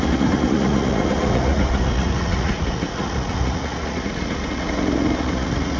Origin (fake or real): fake